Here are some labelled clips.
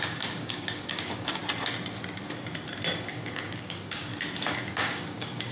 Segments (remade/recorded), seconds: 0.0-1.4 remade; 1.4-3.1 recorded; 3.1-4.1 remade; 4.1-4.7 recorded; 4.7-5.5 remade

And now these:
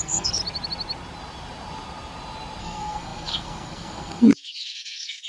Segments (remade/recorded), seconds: 0.0-0.4 remade; 0.4-2.6 recorded; 2.6-5.3 remade

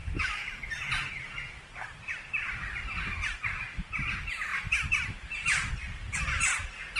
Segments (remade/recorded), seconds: 0.0-7.0 recorded

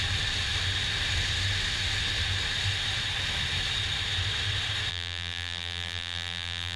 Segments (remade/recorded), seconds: 0.0-4.9 recorded; 4.9-6.8 remade

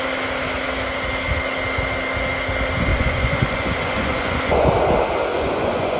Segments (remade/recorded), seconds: 0.0-2.9 recorded; 2.9-4.7 remade; 4.7-5.3 recorded; 5.3-6.0 remade

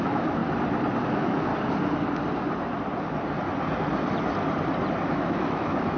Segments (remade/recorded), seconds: 0.0-0.4 remade; 0.4-1.0 recorded; 1.0-1.5 remade; 1.5-5.1 recorded; 5.1-6.0 remade

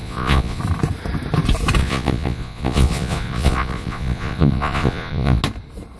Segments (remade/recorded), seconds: 0.0-0.6 remade; 0.6-1.8 recorded; 1.8-5.4 remade; 5.4-6.0 recorded

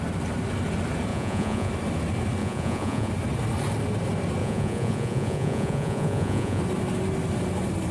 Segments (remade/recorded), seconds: 0.0-1.1 recorded; 1.1-1.7 remade; 1.7-2.4 recorded; 2.4-3.1 remade; 3.1-4.4 recorded; 4.4-6.6 remade; 6.6-7.9 recorded